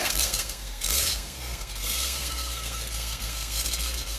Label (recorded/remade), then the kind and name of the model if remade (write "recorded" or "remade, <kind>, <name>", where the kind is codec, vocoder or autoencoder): remade, codec, SNAC